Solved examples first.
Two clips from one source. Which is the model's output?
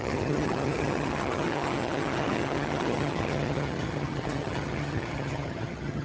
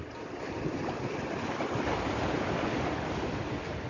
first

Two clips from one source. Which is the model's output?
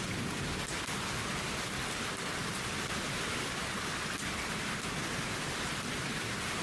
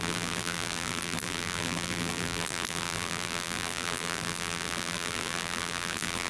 second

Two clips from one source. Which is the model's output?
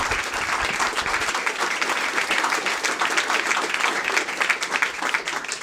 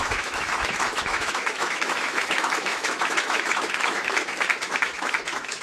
second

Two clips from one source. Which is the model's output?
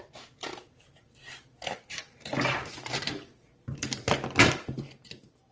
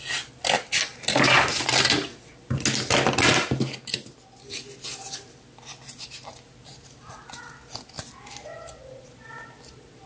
first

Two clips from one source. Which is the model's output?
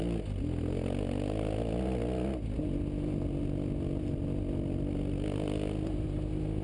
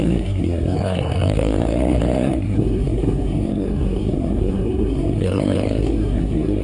second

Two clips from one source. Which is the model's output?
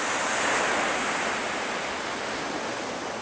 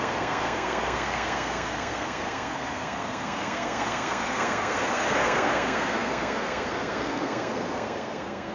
second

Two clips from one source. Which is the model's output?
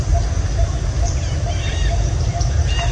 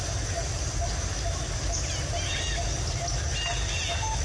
first